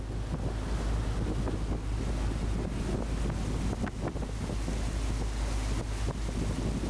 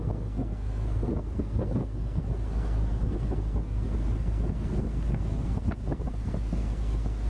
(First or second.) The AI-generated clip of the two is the second